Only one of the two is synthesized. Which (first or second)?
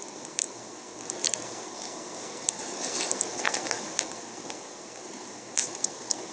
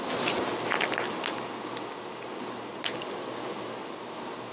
first